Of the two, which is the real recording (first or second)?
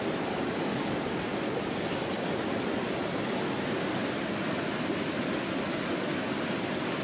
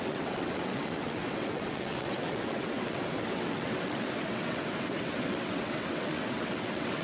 first